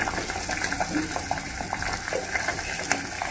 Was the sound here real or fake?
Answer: real